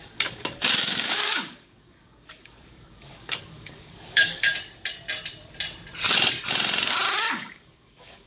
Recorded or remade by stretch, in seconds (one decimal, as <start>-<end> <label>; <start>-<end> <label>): 0.0-4.5 remade; 4.5-7.3 recorded; 7.3-8.3 remade